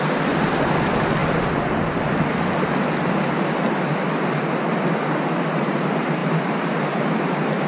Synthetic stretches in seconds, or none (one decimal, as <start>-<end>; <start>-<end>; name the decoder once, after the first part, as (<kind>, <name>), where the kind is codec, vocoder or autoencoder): none